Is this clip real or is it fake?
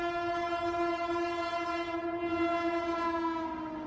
real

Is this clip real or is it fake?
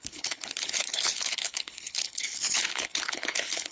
fake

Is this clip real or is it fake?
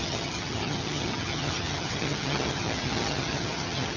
fake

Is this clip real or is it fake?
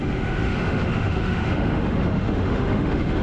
fake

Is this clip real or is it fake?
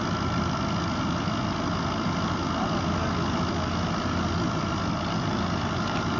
real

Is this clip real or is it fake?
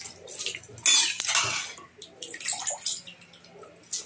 real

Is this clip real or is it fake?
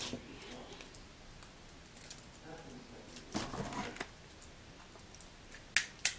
real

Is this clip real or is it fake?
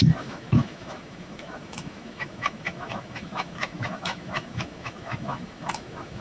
fake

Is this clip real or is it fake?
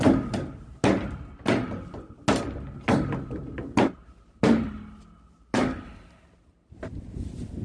real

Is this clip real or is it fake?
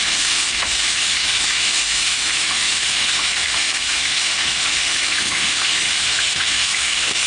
fake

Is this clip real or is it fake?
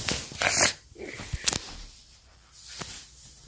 real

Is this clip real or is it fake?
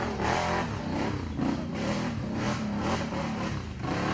real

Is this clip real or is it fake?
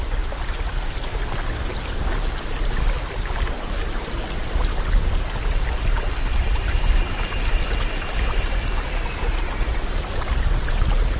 real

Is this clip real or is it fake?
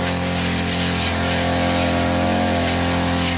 real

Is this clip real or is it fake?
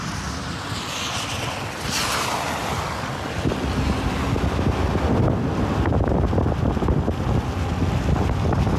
real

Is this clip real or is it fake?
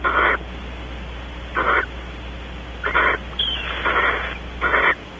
real